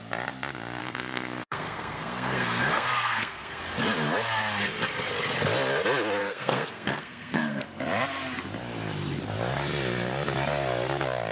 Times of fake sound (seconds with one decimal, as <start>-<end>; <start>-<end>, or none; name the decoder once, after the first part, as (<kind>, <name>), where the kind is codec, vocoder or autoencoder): 0.8-3.6 (codec, SNAC); 6.2-7.6